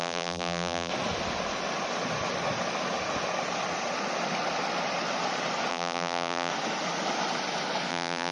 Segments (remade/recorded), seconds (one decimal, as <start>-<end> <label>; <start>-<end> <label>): 0.0-0.9 remade; 0.9-5.7 recorded; 5.7-6.5 remade; 6.5-7.9 recorded; 7.9-8.3 remade